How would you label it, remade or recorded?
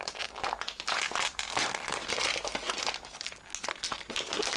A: recorded